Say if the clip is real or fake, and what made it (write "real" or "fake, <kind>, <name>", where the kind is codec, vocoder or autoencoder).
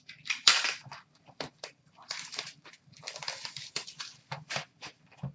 fake, vocoder, BigVGAN v2